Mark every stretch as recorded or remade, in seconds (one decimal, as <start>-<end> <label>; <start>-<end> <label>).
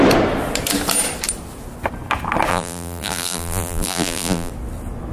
0.0-2.5 recorded; 2.5-4.5 remade; 4.5-5.1 recorded